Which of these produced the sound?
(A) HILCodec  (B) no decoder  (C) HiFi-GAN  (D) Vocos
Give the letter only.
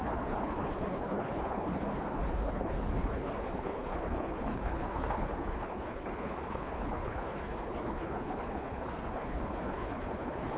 A